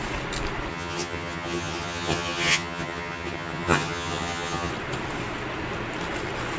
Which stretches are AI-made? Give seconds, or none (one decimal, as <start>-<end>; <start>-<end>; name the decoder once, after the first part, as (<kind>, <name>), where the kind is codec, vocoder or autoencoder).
0.7-4.7 (vocoder, HiFi-GAN)